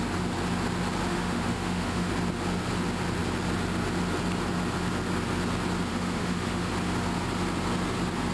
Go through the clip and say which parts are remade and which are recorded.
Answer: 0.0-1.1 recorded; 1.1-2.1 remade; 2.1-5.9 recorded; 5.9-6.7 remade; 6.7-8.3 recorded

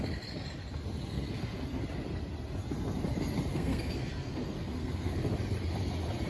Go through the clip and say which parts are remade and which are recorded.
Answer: 0.0-1.1 recorded; 1.1-1.8 remade; 1.8-3.5 recorded; 3.5-5.3 remade; 5.3-6.3 recorded

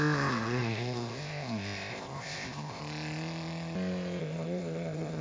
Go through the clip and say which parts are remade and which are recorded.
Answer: 0.0-2.8 remade; 2.8-4.2 recorded; 4.2-5.2 remade

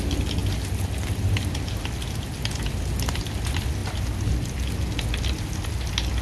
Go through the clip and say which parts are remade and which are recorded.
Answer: 0.0-6.2 recorded

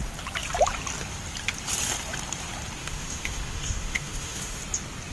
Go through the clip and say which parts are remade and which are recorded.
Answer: 0.0-2.8 recorded; 2.8-4.6 remade; 4.6-5.1 recorded

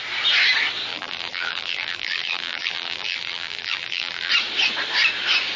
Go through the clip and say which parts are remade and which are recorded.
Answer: 0.0-0.9 recorded; 0.9-4.3 remade; 4.3-5.6 recorded

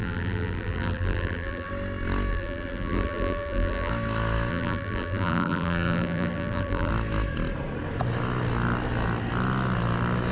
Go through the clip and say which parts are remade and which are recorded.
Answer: 0.0-1.7 remade; 1.7-2.3 recorded; 2.3-3.9 remade; 3.9-4.5 recorded; 4.5-6.9 remade; 6.9-10.3 recorded

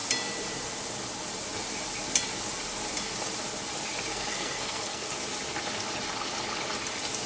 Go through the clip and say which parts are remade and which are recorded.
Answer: 0.0-4.1 recorded; 4.1-5.1 remade; 5.1-7.3 recorded